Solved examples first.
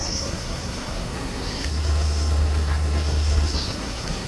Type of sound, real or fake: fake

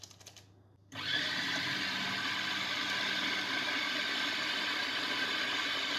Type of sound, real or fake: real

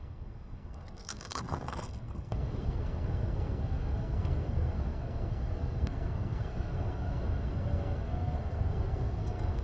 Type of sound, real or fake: fake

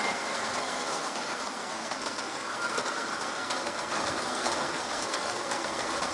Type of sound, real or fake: fake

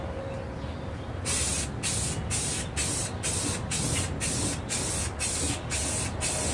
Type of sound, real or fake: real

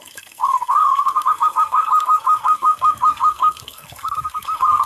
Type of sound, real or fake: fake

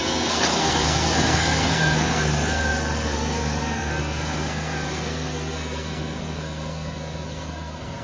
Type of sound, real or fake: fake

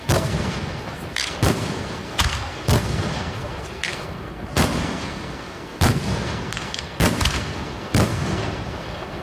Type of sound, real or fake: fake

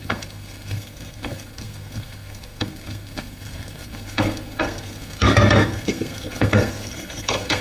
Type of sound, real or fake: fake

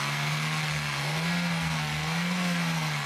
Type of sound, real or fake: fake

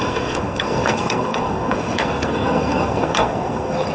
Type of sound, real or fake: fake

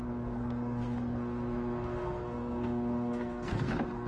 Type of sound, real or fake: fake